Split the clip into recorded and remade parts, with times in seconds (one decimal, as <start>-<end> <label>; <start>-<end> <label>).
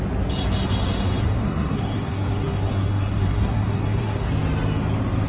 0.0-1.2 recorded; 1.2-4.3 remade; 4.3-5.3 recorded